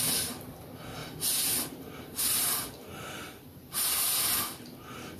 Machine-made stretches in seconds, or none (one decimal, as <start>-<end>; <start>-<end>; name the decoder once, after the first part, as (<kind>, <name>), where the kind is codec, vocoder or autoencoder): 1.0-4.1 (vocoder, BigVGAN v2)